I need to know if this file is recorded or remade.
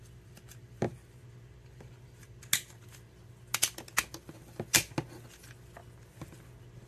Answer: recorded